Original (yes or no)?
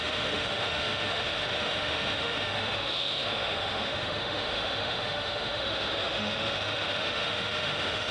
no